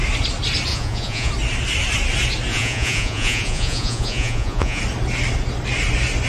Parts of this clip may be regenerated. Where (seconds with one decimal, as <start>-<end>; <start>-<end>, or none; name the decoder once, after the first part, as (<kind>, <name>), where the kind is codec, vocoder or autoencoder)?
0.7-1.3 (vocoder, Vocos); 2.5-4.8